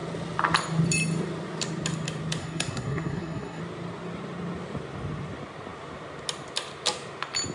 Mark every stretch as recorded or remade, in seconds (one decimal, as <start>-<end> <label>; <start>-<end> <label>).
0.0-2.4 recorded; 2.4-3.6 remade; 3.6-7.5 recorded